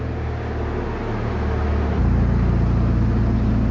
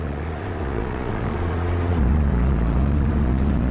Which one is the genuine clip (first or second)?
first